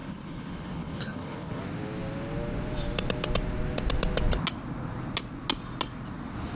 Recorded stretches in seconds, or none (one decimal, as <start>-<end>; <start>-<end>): 1.6-6.6